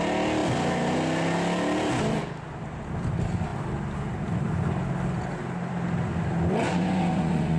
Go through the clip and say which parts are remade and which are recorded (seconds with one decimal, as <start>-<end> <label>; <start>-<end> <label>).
0.0-6.6 recorded; 6.6-7.6 remade